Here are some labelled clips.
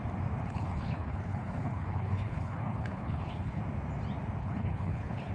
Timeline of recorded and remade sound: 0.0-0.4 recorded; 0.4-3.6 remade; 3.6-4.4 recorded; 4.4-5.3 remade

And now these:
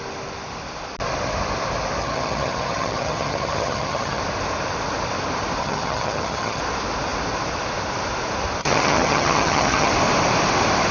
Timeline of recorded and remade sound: 0.0-2.0 recorded; 2.0-4.2 remade; 4.2-5.6 recorded; 5.6-6.6 remade; 6.6-8.6 recorded; 8.6-9.9 remade; 9.9-10.9 recorded

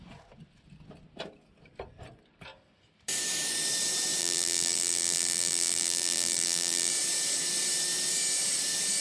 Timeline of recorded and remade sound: 0.0-4.2 recorded; 4.2-6.9 remade; 6.9-9.0 recorded

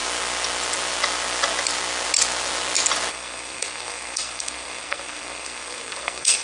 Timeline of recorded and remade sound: 0.0-3.1 recorded; 3.1-6.4 remade